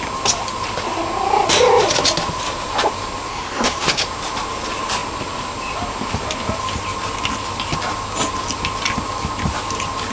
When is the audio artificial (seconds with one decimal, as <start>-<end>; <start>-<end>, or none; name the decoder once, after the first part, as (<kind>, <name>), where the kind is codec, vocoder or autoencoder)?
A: 3.3-4.0 (codec, SNAC)